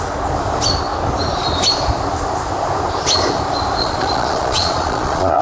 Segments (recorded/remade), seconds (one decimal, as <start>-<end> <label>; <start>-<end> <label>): 0.0-3.8 recorded; 3.8-5.4 remade